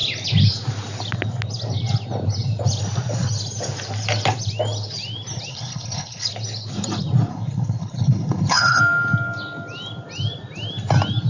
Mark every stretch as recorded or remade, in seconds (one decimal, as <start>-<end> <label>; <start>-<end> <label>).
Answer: 0.0-5.5 recorded; 5.5-6.3 remade; 6.3-7.3 recorded; 7.3-8.8 remade; 8.8-11.3 recorded

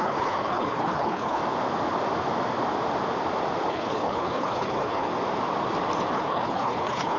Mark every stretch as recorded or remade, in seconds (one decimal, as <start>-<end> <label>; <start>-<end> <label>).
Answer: 0.0-1.4 remade; 1.4-3.7 recorded; 3.7-5.1 remade; 5.1-6.1 recorded; 6.1-7.2 remade